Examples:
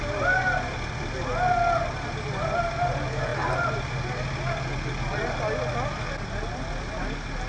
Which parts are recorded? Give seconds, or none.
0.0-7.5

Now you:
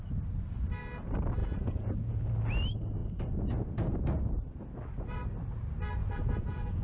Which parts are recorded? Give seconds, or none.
0.0-1.4; 2.3-6.0

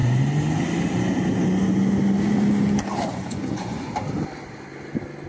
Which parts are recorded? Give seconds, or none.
0.0-3.1; 3.9-5.3

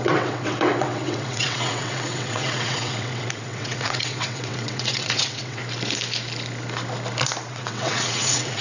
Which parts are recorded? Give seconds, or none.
5.6-7.5

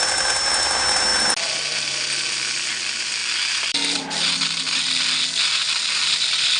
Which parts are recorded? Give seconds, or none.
0.0-3.2; 4.2-5.6; 6.1-6.6

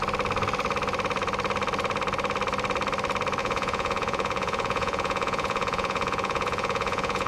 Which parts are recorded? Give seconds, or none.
0.0-3.4

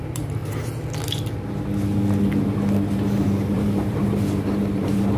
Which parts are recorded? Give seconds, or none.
0.4-3.5; 4.0-4.8

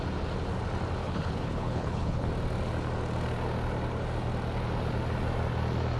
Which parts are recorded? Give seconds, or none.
0.0-1.0; 2.3-6.0